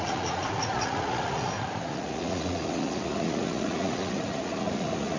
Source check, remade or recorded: remade